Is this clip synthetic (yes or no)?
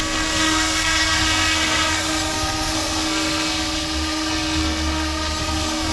yes